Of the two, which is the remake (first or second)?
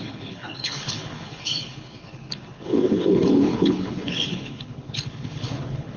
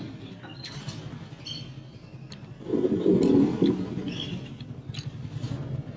first